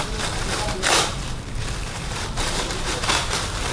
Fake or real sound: fake